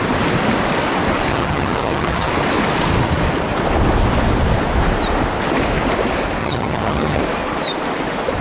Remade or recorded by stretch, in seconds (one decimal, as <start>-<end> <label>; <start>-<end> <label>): 0.0-1.3 recorded; 1.3-2.3 remade; 2.3-6.4 recorded; 6.4-7.2 remade; 7.2-8.4 recorded